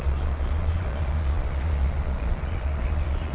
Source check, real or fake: fake